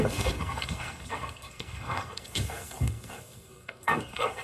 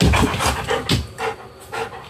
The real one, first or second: second